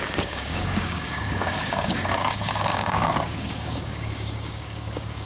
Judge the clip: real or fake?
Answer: fake